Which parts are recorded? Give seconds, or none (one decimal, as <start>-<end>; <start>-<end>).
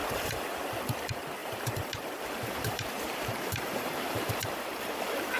0.7-1.4; 4.3-5.4